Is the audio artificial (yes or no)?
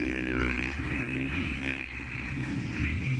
yes